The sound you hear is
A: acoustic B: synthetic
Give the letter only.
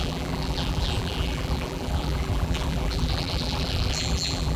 B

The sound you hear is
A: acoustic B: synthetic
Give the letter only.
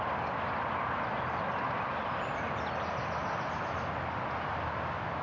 A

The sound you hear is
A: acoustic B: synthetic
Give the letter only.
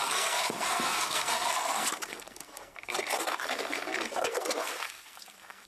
B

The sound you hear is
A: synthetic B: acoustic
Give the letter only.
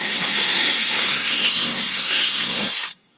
A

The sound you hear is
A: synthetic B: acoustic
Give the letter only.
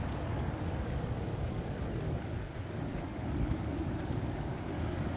A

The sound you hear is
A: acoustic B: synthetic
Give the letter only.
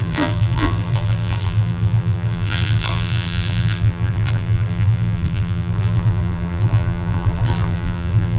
B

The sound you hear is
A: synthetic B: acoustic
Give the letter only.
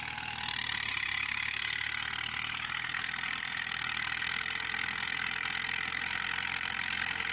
B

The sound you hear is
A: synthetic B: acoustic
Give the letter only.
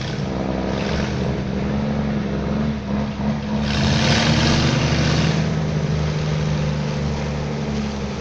B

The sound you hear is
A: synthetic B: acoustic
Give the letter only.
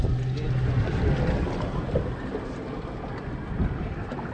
B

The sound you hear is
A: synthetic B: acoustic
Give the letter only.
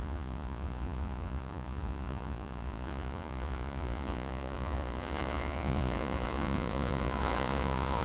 A